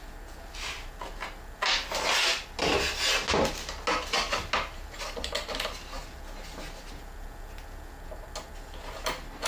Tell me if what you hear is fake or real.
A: real